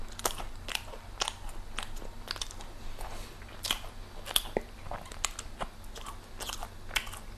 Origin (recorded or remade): recorded